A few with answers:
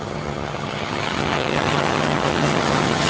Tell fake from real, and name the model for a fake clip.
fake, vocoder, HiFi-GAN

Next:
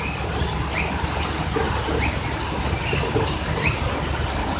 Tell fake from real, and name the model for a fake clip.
real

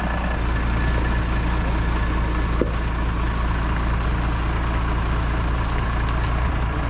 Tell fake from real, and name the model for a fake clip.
real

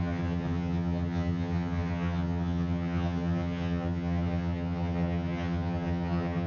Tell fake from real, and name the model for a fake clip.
fake, vocoder, HiFi-GAN